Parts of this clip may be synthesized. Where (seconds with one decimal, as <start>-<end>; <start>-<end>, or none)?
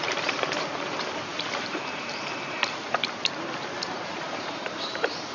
0.0-5.3